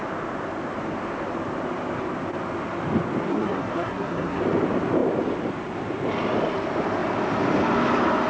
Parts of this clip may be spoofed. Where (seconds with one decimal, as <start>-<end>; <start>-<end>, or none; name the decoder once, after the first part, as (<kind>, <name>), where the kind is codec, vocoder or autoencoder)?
3.3-4.4 (codec, SNAC)